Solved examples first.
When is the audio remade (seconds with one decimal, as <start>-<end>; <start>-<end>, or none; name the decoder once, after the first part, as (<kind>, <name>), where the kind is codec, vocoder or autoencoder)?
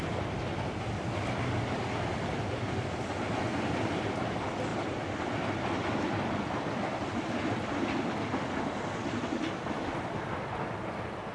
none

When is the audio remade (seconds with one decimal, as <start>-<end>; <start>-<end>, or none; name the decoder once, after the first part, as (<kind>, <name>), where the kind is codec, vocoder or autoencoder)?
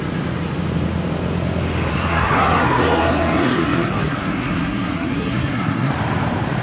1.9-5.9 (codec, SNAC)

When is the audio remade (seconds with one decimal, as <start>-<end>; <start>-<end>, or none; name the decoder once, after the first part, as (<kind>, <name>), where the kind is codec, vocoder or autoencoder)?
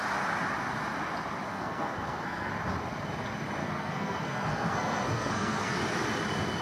1.5-2.5 (codec, SNAC); 3.6-5.8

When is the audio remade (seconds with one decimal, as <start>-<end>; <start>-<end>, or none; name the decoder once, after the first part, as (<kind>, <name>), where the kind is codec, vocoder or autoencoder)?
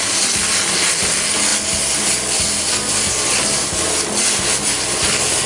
none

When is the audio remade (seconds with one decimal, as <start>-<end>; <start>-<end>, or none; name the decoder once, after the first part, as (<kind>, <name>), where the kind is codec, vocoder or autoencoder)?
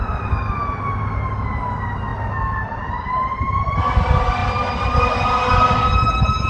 none